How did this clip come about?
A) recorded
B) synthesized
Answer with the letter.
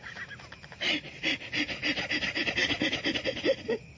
A